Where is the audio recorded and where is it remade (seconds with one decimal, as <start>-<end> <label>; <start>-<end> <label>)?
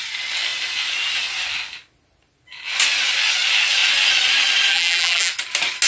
0.0-4.7 recorded; 4.7-5.3 remade; 5.3-5.9 recorded